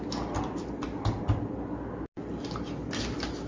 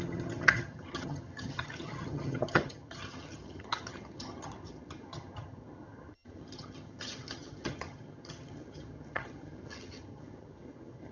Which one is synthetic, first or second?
second